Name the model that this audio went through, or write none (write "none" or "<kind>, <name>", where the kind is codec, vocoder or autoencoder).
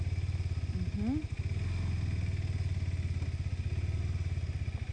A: none